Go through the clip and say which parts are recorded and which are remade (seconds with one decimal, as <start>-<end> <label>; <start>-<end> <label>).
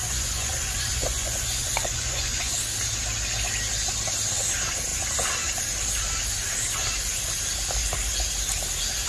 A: 0.0-2.6 remade; 2.6-9.1 recorded